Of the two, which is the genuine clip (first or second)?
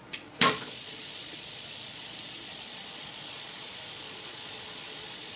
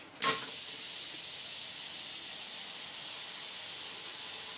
second